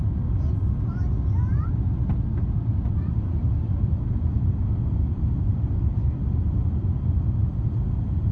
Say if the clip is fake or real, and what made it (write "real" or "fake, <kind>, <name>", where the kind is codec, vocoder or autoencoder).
real